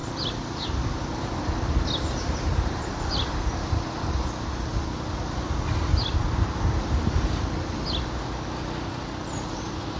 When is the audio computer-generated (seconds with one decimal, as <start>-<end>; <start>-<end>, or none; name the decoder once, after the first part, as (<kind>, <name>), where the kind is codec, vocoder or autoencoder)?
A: 0.0-4.7 (vocoder, BigVGAN v2); 9.3-10.0